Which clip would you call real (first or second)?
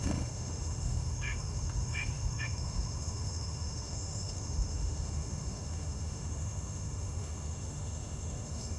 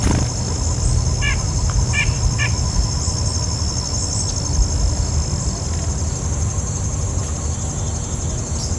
second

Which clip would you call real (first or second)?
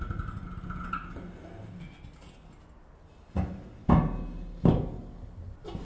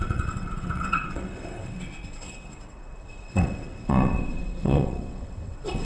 first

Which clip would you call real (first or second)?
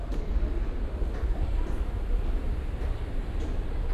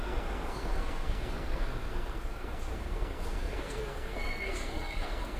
first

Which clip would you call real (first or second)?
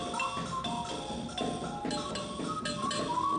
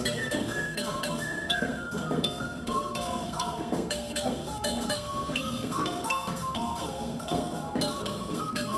first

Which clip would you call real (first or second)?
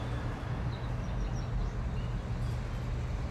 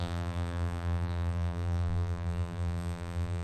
first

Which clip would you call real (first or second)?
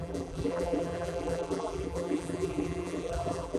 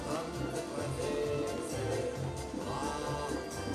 second